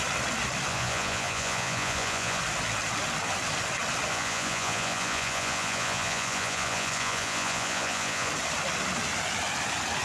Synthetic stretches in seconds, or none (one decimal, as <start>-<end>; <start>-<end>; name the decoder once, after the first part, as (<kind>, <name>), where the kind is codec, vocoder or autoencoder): 0.7-2.4 (vocoder, Vocos); 4.1-8.3